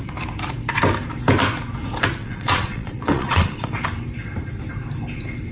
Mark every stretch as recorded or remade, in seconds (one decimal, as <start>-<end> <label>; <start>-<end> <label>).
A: 0.0-2.2 recorded; 2.2-3.7 remade; 3.7-5.5 recorded